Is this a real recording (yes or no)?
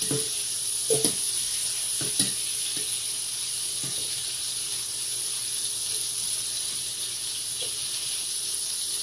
yes